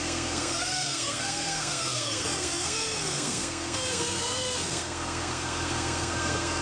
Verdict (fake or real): fake